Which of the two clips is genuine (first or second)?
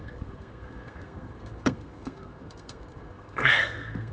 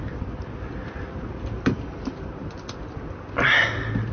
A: second